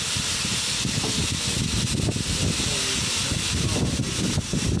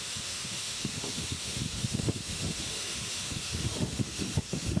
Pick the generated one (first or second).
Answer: second